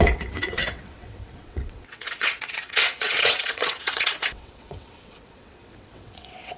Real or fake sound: fake